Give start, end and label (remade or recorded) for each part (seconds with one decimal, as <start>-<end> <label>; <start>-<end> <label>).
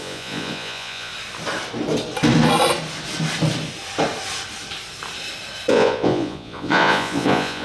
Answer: 0.0-1.1 remade; 1.1-5.7 recorded; 5.7-7.6 remade